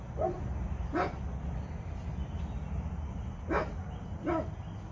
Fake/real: real